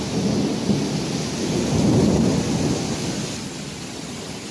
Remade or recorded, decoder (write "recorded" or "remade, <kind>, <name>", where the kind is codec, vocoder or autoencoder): recorded